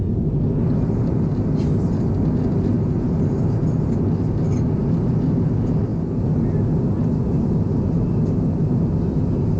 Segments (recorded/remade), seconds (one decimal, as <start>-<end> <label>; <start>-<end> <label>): 0.0-9.6 recorded